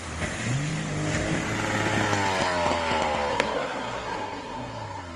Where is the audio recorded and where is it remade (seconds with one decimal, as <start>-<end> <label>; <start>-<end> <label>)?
0.0-3.3 recorded; 3.3-5.2 remade